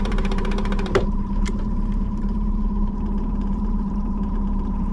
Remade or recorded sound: remade